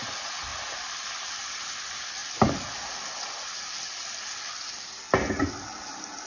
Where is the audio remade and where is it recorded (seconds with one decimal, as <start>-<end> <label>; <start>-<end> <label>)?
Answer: 0.0-6.3 recorded